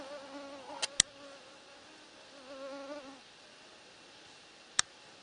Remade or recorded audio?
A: recorded